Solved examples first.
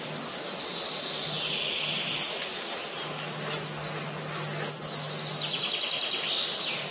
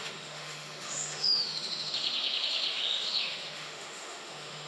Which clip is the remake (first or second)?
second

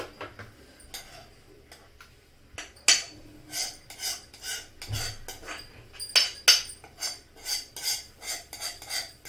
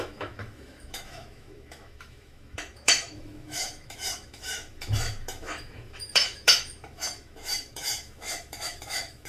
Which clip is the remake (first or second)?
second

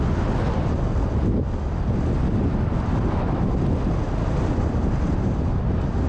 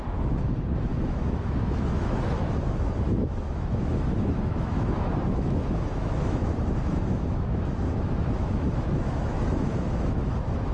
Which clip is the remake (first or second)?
second